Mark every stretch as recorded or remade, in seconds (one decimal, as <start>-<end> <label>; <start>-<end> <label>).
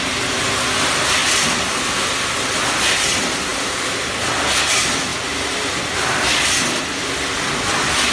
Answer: 0.0-3.5 recorded; 3.5-4.3 remade; 4.3-8.1 recorded